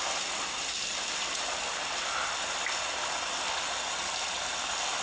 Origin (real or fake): real